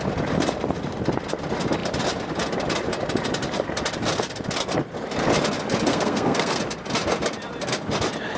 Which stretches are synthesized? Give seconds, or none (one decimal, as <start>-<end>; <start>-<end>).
5.9-6.6